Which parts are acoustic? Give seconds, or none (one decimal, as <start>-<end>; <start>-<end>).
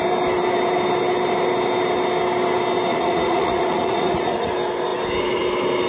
0.0-2.9; 4.5-5.9